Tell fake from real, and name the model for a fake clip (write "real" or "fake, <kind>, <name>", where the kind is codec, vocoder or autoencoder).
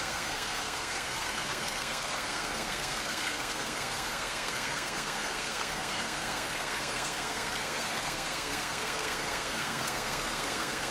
fake, codec, SNAC